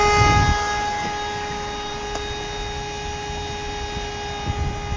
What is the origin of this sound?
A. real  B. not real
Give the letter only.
A